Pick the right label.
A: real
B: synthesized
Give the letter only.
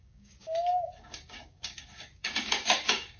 B